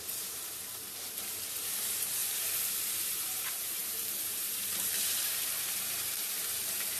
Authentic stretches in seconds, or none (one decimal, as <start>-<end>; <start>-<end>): 2.2-2.8